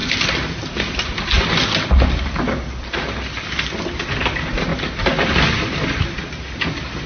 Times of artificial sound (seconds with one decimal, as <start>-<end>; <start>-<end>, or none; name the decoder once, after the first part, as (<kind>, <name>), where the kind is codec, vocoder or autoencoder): none